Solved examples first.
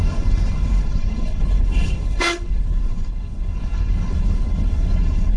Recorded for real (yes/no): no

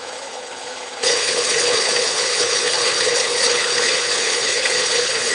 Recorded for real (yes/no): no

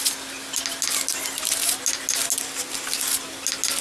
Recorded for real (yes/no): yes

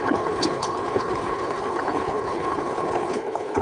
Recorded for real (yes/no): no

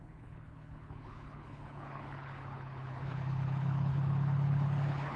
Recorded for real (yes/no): no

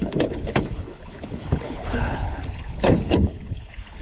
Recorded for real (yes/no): no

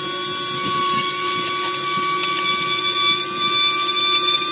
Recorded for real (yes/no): yes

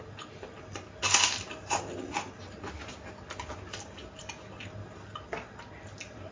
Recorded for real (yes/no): yes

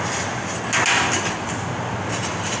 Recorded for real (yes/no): yes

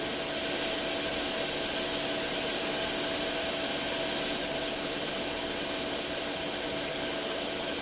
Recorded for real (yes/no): yes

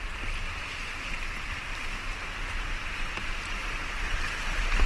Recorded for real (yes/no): yes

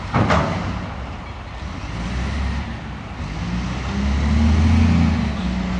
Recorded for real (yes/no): yes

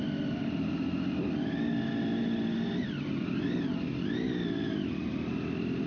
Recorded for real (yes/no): yes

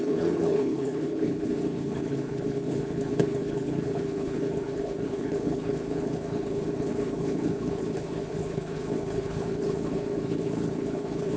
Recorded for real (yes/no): no